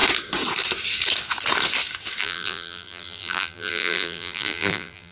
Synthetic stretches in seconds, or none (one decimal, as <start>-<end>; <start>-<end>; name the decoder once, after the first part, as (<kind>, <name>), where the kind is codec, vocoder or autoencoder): 2.2-5.1 (vocoder, BigVGAN v2)